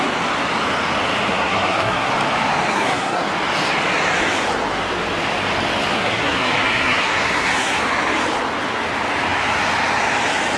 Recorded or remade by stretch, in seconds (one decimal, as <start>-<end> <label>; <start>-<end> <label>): 0.0-1.3 recorded; 1.3-2.1 remade; 2.1-2.7 recorded; 2.7-3.3 remade; 3.3-5.9 recorded; 5.9-7.8 remade; 7.8-10.6 recorded